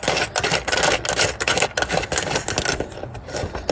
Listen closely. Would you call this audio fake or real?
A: real